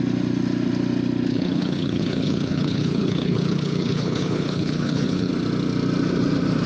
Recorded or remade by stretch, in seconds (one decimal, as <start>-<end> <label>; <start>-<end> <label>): 0.0-1.3 recorded; 1.3-5.3 remade; 5.3-6.7 recorded